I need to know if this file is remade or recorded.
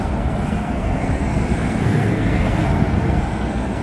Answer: remade